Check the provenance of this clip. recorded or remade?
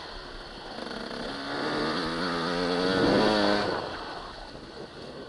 recorded